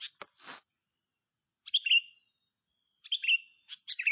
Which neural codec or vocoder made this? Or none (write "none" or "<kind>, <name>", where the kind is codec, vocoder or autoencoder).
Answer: none